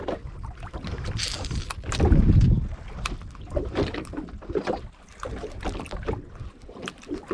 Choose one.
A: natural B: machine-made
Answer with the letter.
A